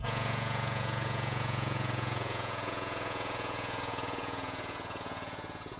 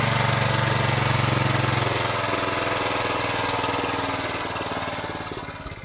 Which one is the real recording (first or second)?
second